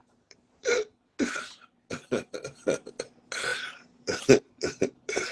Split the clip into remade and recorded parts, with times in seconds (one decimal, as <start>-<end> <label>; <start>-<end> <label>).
0.0-0.7 remade; 0.7-3.5 recorded; 3.5-5.3 remade